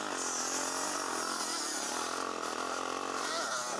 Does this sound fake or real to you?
real